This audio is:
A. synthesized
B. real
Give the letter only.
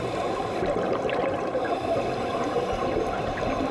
B